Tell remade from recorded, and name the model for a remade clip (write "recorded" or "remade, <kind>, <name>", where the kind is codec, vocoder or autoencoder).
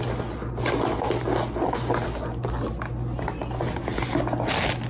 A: recorded